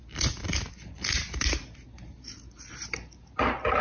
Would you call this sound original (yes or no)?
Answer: yes